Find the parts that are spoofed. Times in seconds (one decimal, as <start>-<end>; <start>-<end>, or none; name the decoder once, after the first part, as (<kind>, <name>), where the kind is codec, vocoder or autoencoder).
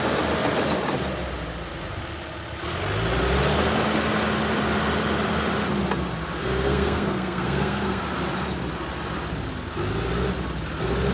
6.4-8.0 (codec, SNAC)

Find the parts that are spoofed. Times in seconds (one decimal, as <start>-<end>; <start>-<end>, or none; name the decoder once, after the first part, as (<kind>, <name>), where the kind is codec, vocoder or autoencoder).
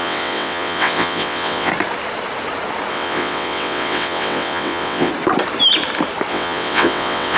0.0-1.7 (vocoder, WaveNeXt); 2.9-5.1; 6.3-7.4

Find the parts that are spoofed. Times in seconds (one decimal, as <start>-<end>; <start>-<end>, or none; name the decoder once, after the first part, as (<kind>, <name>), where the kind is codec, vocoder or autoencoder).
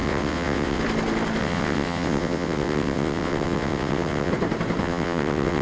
0.0-0.8 (vocoder, WaveNeXt); 1.4-4.3; 4.8-5.6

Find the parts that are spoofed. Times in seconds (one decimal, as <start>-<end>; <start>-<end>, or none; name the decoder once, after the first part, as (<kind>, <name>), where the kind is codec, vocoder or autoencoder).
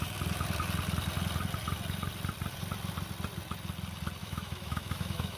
4.2-5.4 (autoencoder, DAC-VAE)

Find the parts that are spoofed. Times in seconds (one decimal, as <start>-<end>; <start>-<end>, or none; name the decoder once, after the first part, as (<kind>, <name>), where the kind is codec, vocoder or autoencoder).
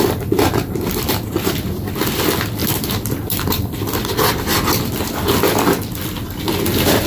2.6-4.4 (vocoder, BigVGAN v2)